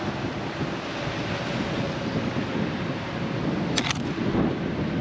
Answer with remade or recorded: recorded